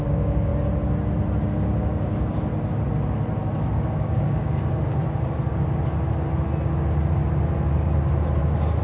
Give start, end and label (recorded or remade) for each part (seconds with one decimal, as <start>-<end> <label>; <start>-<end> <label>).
0.0-0.5 remade; 0.5-1.4 recorded; 1.4-2.5 remade; 2.5-3.6 recorded; 3.6-5.0 remade; 5.0-8.4 recorded; 8.4-8.8 remade